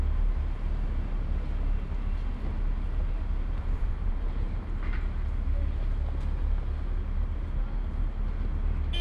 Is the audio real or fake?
real